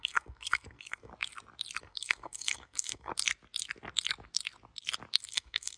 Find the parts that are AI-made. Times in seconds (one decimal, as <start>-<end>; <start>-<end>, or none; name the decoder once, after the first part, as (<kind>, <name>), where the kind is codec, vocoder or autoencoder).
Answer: 0.0-1.1 (codec, SNAC); 1.8-3.1; 5.3-5.8